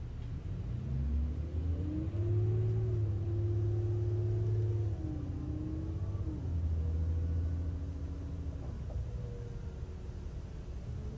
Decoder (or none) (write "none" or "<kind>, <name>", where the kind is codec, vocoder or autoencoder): none